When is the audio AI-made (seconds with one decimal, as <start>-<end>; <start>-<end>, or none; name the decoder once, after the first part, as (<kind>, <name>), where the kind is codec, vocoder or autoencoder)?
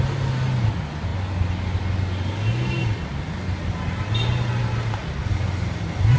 none